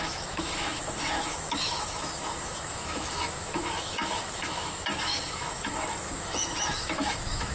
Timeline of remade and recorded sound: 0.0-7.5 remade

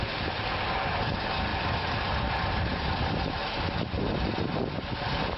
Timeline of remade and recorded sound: 0.0-1.5 recorded; 1.5-4.1 remade; 4.1-5.4 recorded

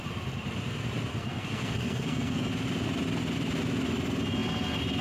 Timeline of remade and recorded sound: 0.0-1.1 recorded; 1.1-2.5 remade; 2.5-5.0 recorded

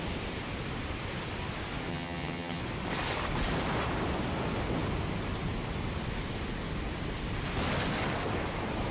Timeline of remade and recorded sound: 0.0-1.9 recorded; 1.9-2.6 remade; 2.6-8.9 recorded

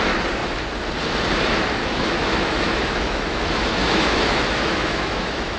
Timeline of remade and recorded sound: 0.0-1.8 recorded; 1.8-5.6 remade